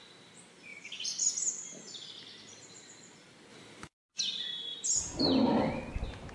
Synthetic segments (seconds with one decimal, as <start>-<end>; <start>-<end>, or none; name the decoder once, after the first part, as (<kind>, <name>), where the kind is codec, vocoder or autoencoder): 4.7-5.8 (vocoder, BigVGAN v2)